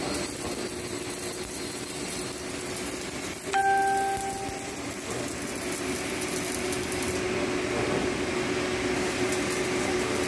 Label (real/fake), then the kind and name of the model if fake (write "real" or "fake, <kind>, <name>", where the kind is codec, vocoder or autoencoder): real